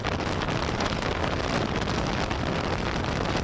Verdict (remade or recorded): remade